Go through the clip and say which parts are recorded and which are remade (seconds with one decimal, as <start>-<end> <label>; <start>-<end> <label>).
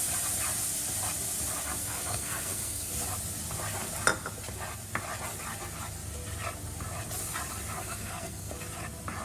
0.0-1.8 recorded; 1.8-2.9 remade; 2.9-7.8 recorded; 7.8-8.5 remade; 8.5-9.2 recorded